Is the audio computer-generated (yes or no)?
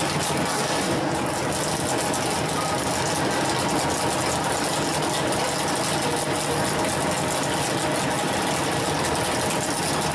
no